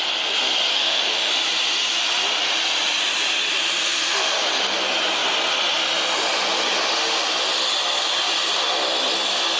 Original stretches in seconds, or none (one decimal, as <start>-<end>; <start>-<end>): 0.0-0.7; 1.3-9.6